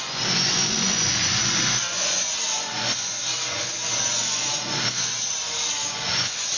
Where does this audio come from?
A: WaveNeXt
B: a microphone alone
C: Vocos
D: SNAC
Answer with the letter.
C